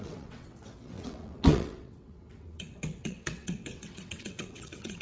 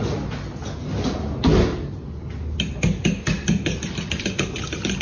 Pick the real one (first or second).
second